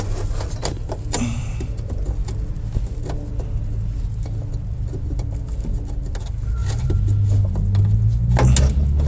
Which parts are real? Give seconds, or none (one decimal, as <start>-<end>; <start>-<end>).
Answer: 0.0-9.1